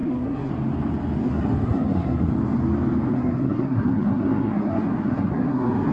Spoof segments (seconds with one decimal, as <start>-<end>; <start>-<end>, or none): 0.0-0.5; 1.2-2.3; 3.1-5.9